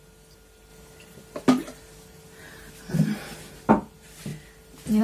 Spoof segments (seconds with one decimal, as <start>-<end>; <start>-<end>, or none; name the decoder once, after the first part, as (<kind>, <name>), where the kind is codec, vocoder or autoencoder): none

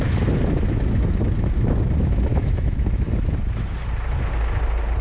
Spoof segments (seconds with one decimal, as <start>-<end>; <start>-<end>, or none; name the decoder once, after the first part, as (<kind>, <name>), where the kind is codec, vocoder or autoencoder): 2.3-3.1 (autoencoder, DAC-VAE)

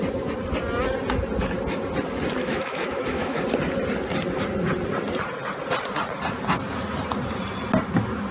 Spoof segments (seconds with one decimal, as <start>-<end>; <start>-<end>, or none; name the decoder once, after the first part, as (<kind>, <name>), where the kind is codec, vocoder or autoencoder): 2.4-3.4 (autoencoder, DAC-VAE)

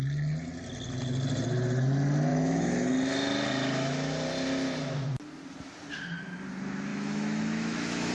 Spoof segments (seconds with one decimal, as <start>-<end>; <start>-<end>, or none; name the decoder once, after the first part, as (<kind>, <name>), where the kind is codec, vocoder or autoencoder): 2.3-2.9 (autoencoder, DAC-VAE); 6.9-8.1

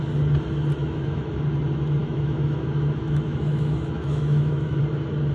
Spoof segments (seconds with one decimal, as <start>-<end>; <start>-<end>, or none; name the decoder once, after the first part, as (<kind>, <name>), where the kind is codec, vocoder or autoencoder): 0.8-1.4 (autoencoder, DAC-VAE); 2.0-4.8